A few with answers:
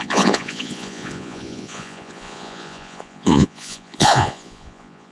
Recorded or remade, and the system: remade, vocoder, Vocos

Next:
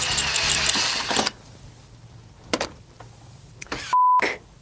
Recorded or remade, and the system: recorded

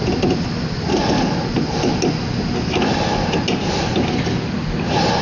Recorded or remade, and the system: recorded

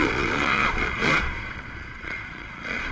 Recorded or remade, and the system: remade, vocoder, Vocos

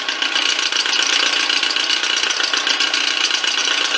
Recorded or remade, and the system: recorded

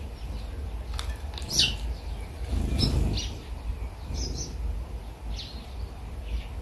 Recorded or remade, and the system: recorded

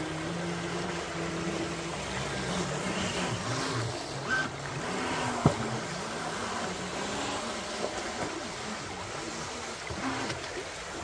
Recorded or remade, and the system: recorded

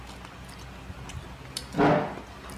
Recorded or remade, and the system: recorded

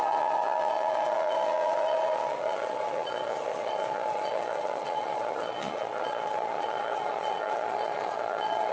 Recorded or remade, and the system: remade, vocoder, Vocos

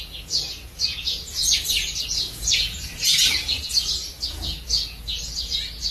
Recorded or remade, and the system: remade, vocoder, Vocos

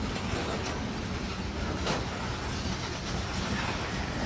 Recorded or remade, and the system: recorded